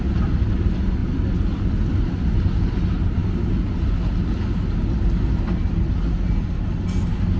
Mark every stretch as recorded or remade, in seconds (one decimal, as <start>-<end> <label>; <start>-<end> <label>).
0.0-7.4 recorded